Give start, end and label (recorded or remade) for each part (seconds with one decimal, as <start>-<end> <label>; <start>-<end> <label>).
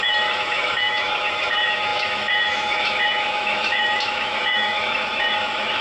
0.0-5.8 remade